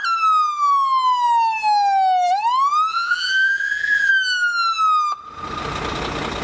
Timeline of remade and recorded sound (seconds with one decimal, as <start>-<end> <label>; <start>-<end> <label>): 0.0-2.9 recorded; 2.9-4.1 remade; 4.1-6.4 recorded